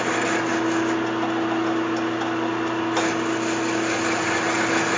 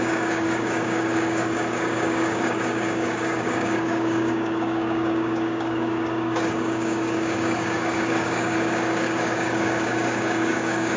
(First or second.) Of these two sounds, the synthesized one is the second